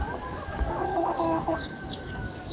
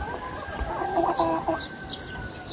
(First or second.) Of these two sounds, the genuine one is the second